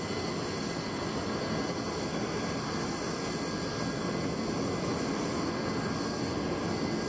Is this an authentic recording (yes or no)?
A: yes